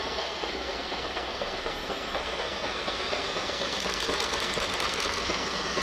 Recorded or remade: remade